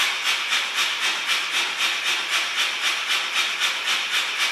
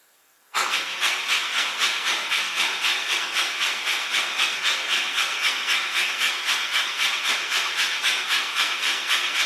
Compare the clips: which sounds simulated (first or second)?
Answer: second